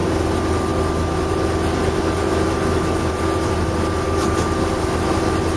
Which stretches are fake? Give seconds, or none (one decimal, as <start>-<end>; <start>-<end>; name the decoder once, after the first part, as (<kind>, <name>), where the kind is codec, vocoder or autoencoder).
none